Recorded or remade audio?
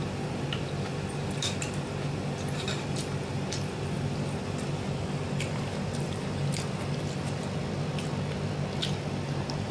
recorded